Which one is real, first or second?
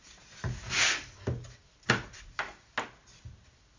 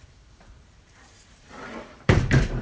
first